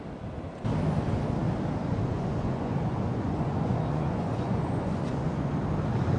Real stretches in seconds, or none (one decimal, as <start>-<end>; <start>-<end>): 0.0-1.8; 5.5-6.2